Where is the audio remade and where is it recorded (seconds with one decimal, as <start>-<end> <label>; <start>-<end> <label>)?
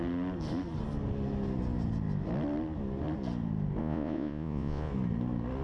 0.0-3.8 recorded; 3.8-4.9 remade; 4.9-5.6 recorded